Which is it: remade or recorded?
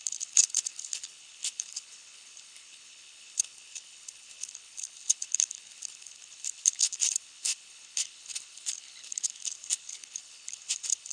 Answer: remade